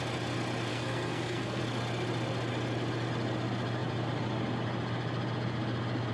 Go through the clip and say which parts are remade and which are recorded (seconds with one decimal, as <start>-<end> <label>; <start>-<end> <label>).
0.0-0.7 recorded; 0.7-1.6 remade; 1.6-6.1 recorded